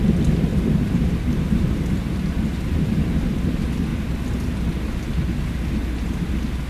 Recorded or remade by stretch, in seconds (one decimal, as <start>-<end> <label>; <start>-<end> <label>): 0.0-0.5 recorded; 0.5-3.0 remade; 3.0-6.7 recorded